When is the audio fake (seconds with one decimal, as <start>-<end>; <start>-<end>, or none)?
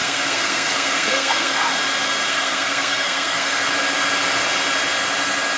0.0-1.7; 2.3-3.7